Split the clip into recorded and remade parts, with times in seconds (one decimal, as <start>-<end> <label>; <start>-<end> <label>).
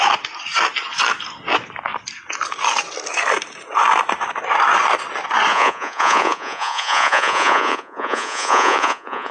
0.0-5.5 recorded; 5.5-9.3 remade